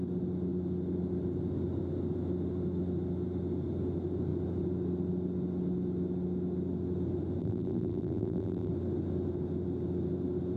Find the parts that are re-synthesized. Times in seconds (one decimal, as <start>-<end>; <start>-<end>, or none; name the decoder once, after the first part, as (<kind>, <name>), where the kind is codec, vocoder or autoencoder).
7.4-8.7 (vocoder, BigVGAN v2)